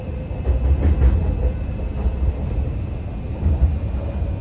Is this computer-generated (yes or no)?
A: no